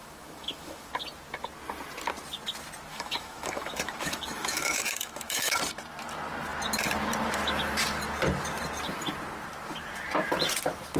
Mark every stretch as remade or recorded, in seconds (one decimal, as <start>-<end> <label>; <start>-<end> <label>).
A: 0.0-0.9 remade; 0.9-2.9 recorded; 2.9-5.6 remade; 5.6-11.0 recorded

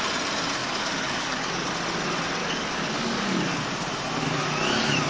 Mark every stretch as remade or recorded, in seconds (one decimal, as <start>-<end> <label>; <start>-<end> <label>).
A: 0.0-0.6 recorded; 0.6-1.7 remade; 1.7-2.4 recorded; 2.4-3.6 remade; 3.6-5.1 recorded

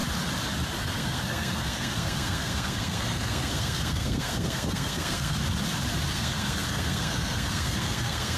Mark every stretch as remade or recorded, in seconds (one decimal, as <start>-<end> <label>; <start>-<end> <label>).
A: 0.0-0.8 recorded; 0.8-5.4 remade; 5.4-6.1 recorded; 6.1-8.4 remade

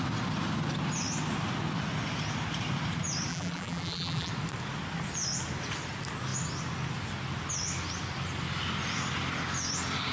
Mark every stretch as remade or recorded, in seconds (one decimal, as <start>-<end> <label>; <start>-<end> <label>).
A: 0.0-3.3 recorded; 3.3-4.3 remade; 4.3-10.1 recorded

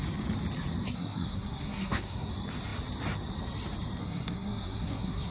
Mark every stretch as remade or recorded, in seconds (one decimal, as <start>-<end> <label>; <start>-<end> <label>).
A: 0.0-0.9 recorded; 0.9-2.3 remade; 2.3-4.0 recorded; 4.0-5.3 remade

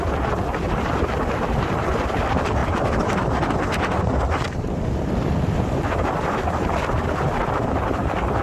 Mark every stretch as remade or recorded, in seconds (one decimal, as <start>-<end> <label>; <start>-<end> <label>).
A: 0.0-8.4 remade

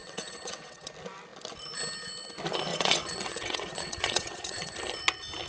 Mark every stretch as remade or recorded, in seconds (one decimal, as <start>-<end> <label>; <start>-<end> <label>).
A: 0.0-0.9 remade; 0.9-2.7 recorded; 2.7-4.7 remade; 4.7-5.5 recorded